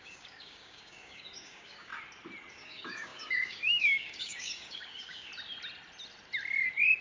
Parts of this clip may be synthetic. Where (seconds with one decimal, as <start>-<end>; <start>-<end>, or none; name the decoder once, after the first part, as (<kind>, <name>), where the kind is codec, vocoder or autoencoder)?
0.0-1.9 (codec, DAC); 2.5-5.3